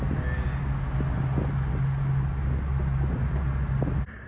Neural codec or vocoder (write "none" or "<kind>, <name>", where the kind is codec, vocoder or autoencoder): none